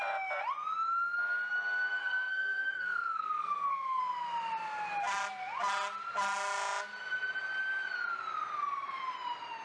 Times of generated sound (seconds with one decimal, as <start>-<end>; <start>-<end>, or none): 2.0-4.0